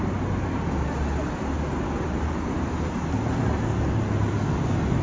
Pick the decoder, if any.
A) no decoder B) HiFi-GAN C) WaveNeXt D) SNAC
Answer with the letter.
A